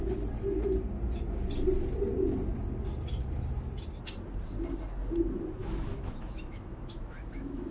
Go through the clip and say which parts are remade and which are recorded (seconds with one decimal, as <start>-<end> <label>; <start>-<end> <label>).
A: 0.0-5.6 recorded; 5.6-7.7 remade